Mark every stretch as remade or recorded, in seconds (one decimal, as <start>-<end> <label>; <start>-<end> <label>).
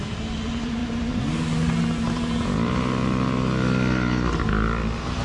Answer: 0.0-5.2 recorded